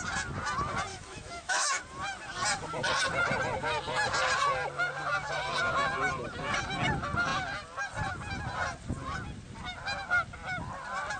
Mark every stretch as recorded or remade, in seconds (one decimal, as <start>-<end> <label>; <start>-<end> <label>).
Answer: 0.0-0.9 recorded; 0.9-1.8 remade; 1.8-11.2 recorded